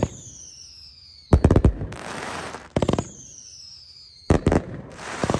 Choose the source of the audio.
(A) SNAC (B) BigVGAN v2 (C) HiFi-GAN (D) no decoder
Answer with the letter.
B